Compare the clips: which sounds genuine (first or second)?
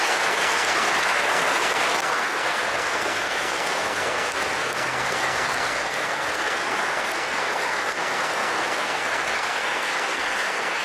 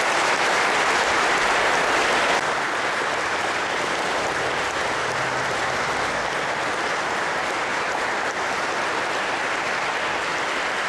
second